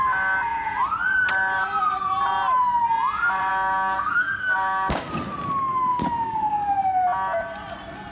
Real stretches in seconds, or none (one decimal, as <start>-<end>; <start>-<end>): 0.0-3.5; 5.1-5.9; 6.8-8.1